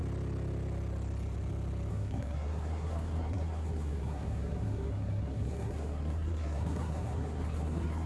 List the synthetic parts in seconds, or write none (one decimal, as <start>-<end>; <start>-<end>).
1.9-8.1

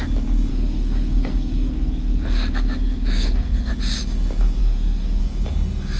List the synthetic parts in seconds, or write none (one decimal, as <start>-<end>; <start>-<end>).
0.5-3.7; 4.6-5.2

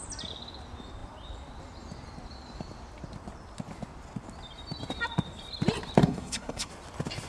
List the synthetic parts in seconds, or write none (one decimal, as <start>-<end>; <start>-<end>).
6.0-6.7

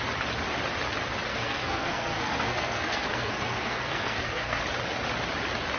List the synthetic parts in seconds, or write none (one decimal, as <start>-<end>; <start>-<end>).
1.3-4.6